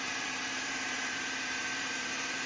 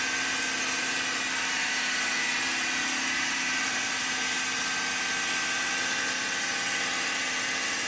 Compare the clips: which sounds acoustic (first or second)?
second